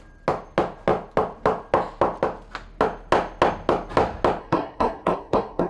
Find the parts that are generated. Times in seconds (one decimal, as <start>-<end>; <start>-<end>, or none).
4.4-5.7